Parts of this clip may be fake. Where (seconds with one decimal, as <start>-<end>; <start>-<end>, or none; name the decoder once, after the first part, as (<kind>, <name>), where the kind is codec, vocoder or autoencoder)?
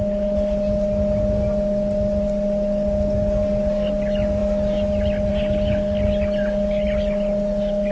none